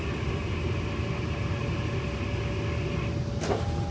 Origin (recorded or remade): recorded